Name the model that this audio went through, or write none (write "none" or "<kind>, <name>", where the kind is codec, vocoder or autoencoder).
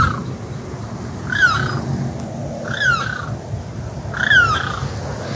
none